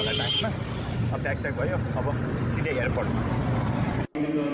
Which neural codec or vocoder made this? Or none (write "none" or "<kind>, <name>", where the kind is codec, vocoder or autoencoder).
none